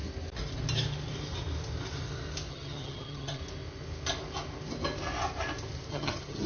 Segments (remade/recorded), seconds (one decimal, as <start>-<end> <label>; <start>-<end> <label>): 0.0-2.5 recorded; 2.5-3.4 remade; 3.4-5.9 recorded; 5.9-6.5 remade